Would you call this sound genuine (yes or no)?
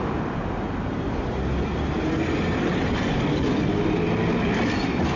yes